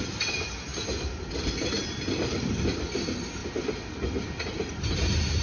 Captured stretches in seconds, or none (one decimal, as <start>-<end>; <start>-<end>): 0.0-5.4